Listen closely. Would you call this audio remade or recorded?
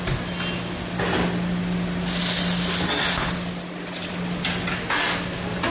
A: recorded